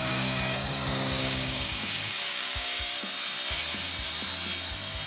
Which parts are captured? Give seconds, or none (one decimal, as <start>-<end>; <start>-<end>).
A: 3.1-5.1